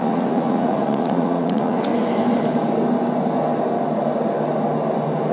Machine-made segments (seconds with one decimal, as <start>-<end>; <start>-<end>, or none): 0.0-1.9